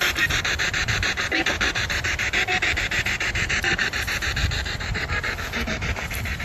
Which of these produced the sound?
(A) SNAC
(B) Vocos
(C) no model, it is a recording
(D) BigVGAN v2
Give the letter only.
D